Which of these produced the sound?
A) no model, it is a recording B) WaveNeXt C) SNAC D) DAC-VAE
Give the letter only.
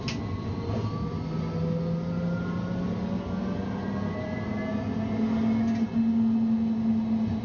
A